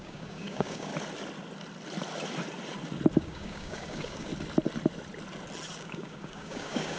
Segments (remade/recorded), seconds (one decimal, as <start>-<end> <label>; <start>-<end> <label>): 0.0-0.9 remade; 0.9-3.1 recorded; 3.1-4.3 remade; 4.3-5.7 recorded; 5.7-7.0 remade